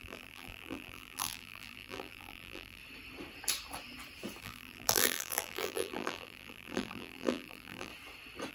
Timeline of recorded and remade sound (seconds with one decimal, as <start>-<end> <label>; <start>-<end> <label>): 0.0-2.8 remade; 2.8-4.4 recorded; 4.4-7.9 remade; 7.9-8.5 recorded